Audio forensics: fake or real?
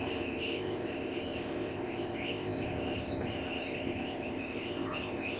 fake